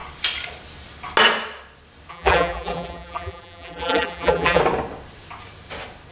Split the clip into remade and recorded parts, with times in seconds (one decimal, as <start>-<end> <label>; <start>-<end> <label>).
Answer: 0.0-2.1 recorded; 2.1-4.6 remade; 4.6-6.1 recorded